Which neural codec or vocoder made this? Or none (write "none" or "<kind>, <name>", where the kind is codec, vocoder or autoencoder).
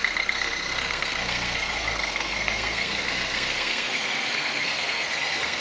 codec, SNAC